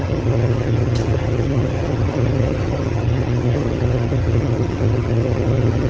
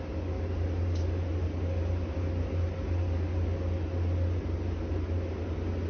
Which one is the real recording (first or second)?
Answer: second